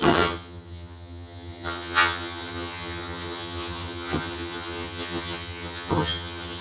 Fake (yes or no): yes